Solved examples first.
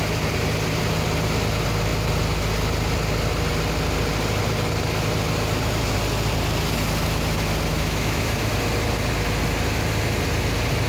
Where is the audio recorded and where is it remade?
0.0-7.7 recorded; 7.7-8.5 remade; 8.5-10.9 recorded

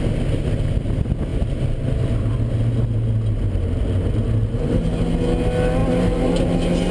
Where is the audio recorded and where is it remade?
0.0-6.9 recorded

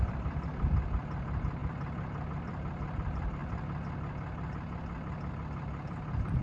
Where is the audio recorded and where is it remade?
0.0-3.4 remade; 3.4-5.3 recorded; 5.3-6.4 remade

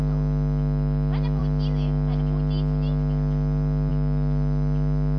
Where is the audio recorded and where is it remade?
0.0-5.2 recorded

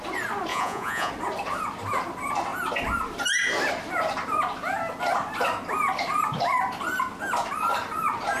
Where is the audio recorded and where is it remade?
0.0-0.5 recorded; 0.5-1.1 remade; 1.1-8.4 recorded

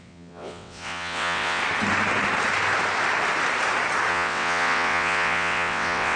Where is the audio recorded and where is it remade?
0.0-1.6 remade; 1.6-4.1 recorded; 4.1-6.2 remade

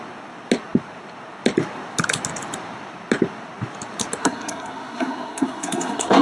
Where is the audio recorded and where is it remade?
0.0-4.2 recorded; 4.2-6.2 remade